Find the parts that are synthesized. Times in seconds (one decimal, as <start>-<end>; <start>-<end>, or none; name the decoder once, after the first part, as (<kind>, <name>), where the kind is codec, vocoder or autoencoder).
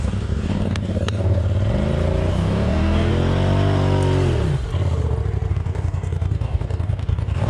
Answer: 0.0-1.4 (codec, DAC); 2.3-3.1; 5.5-7.5